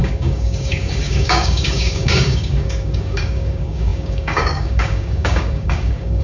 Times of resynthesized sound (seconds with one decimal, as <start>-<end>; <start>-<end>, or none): 0.0-6.2